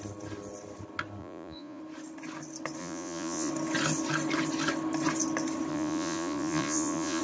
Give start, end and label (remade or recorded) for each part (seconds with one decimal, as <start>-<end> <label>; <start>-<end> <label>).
0.0-1.2 recorded; 1.2-1.8 remade; 1.8-2.8 recorded; 2.8-3.5 remade; 3.5-5.7 recorded; 5.7-7.2 remade